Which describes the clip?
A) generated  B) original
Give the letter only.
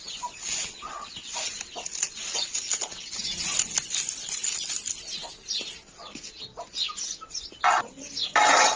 B